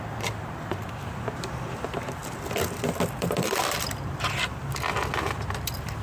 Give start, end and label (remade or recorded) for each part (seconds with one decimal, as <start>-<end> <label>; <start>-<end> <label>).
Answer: 0.0-2.2 remade; 2.2-2.8 recorded; 2.8-6.0 remade